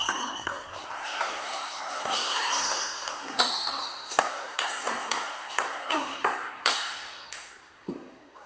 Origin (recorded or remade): remade